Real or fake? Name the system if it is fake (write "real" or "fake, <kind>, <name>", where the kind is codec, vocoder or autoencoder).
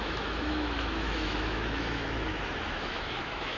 fake, autoencoder, DAC-VAE